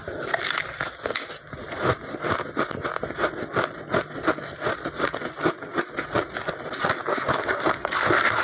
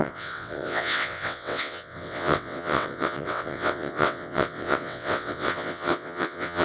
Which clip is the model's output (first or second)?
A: second